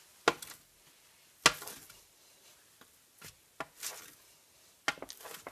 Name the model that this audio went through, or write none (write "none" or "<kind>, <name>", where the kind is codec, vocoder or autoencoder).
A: none